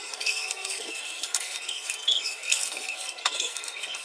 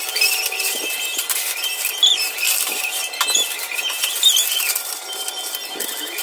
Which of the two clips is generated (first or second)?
first